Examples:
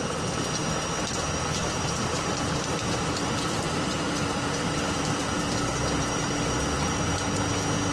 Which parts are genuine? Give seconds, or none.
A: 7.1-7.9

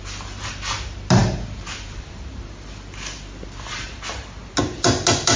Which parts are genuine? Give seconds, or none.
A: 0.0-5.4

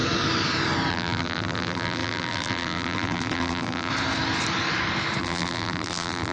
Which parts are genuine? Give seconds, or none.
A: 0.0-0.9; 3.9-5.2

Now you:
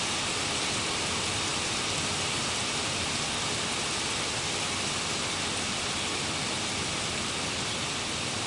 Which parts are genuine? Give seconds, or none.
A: 0.0-8.5

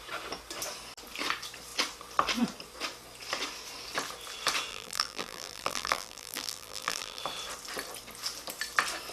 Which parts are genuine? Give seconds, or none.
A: 0.0-4.7; 7.2-9.1

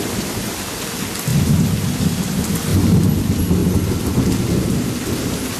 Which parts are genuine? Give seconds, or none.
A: 0.0-1.3; 2.2-5.6

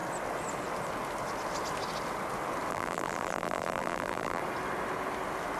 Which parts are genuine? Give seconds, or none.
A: 0.0-2.7; 4.4-5.6

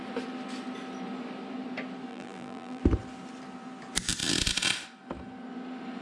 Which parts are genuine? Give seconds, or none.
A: 0.0-2.1; 2.8-6.0